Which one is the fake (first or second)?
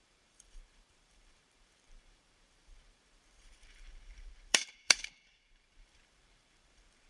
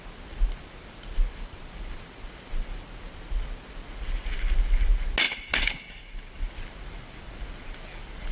first